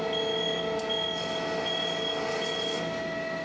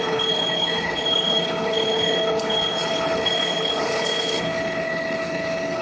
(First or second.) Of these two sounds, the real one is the first